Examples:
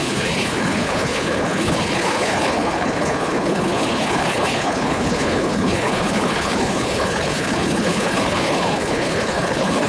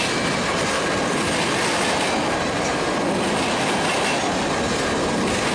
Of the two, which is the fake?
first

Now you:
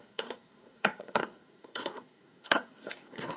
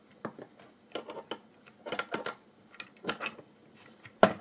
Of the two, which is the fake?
first